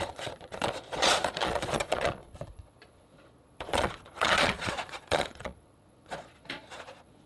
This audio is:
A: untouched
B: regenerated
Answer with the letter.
B